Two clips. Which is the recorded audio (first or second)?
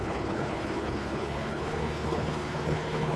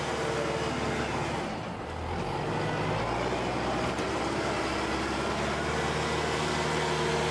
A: second